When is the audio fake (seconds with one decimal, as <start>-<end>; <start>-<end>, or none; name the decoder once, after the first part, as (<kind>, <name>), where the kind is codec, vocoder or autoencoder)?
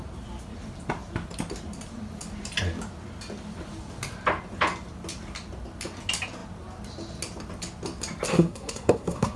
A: 8.3-9.4 (codec, SNAC)